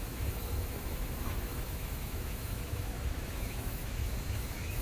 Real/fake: fake